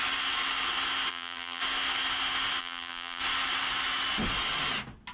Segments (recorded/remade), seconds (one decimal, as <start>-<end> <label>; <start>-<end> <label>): 0.0-1.1 recorded; 1.1-1.6 remade; 1.6-2.6 recorded; 2.6-3.2 remade; 3.2-5.1 recorded